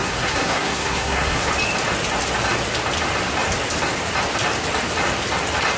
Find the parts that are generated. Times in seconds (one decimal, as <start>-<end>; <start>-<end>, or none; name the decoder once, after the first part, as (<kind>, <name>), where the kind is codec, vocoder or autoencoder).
0.0-1.5 (codec, SNAC)